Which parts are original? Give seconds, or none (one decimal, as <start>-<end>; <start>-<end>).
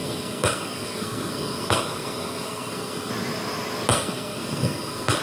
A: 3.1-3.9